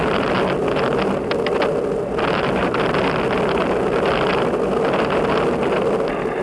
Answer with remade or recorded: recorded